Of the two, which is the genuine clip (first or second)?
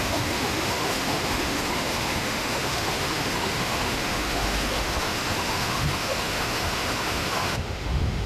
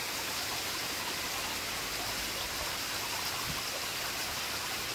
second